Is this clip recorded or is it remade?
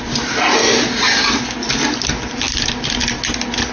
recorded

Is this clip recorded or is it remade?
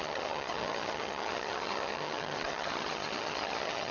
remade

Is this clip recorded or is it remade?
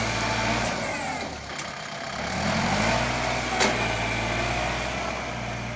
recorded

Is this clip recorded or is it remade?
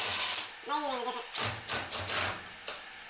recorded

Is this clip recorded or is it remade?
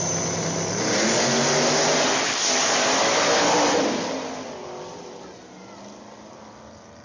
recorded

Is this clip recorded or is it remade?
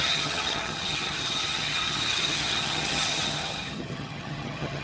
remade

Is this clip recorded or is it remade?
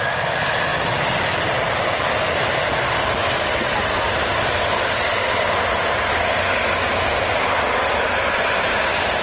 recorded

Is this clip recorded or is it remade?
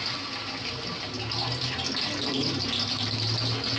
recorded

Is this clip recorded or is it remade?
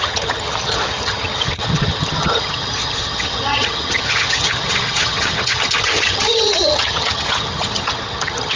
remade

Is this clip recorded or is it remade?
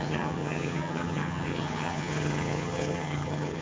remade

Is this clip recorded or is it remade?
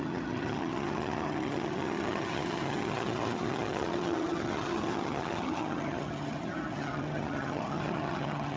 remade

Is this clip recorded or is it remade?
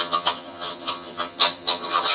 remade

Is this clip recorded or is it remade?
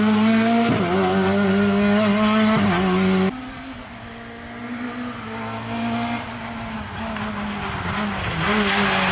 recorded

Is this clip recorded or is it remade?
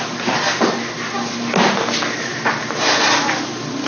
recorded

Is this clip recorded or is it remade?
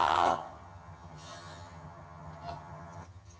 remade